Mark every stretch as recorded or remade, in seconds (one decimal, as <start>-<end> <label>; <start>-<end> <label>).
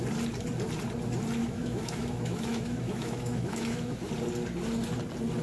0.0-1.4 recorded; 1.4-4.1 remade; 4.1-5.4 recorded